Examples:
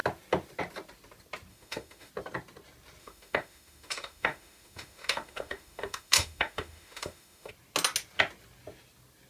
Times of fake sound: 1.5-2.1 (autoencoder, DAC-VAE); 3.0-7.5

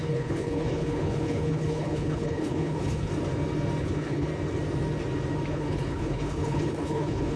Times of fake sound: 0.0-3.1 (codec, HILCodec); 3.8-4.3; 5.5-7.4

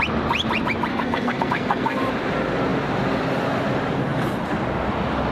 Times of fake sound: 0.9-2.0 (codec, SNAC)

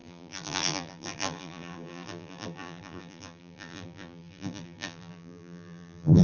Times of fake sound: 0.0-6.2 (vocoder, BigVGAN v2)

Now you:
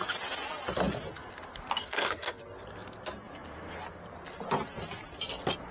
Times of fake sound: 1.8-2.4 (codec, SNAC)

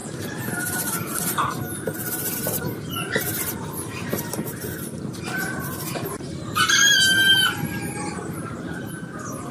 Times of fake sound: 0.0-5.0 (vocoder, BigVGAN v2); 7.7-8.7